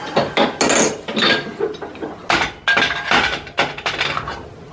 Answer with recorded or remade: recorded